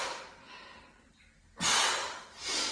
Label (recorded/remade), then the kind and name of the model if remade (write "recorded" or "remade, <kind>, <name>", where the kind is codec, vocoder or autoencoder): recorded